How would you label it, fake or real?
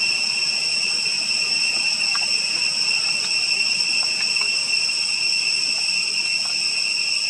real